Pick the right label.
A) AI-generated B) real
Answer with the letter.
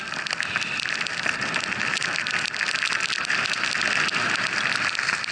B